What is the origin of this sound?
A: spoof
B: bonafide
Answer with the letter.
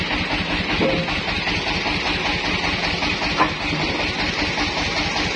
B